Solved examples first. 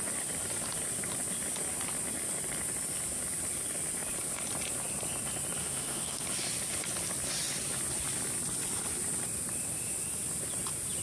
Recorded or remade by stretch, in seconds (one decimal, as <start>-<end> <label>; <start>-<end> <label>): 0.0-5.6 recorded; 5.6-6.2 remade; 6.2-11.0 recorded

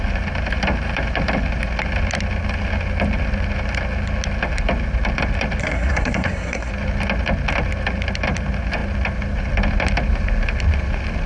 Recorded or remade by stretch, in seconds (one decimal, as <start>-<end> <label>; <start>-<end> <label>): 0.0-5.6 recorded; 5.6-6.7 remade; 6.7-11.3 recorded

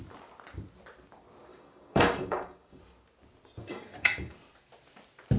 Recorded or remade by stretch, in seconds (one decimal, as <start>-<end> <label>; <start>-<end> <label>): 0.0-1.5 recorded; 1.5-2.8 remade; 2.8-3.6 recorded; 3.6-4.4 remade; 4.4-5.4 recorded

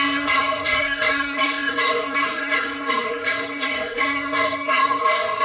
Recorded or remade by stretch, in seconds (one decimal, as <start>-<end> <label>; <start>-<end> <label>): 0.0-5.4 remade

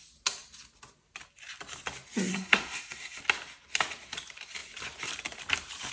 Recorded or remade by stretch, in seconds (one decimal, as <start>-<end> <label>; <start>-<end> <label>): 0.0-2.3 recorded; 2.3-3.2 remade; 3.2-5.9 recorded

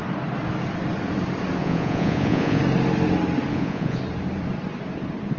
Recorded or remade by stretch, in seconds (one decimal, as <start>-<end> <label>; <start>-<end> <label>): 0.0-1.6 recorded; 1.6-2.6 remade; 2.6-3.5 recorded; 3.5-4.0 remade; 4.0-5.4 recorded

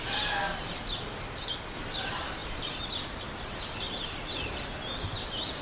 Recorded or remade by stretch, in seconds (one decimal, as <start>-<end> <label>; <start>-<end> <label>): 0.0-5.6 recorded